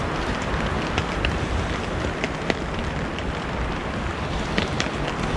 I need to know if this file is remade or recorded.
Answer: recorded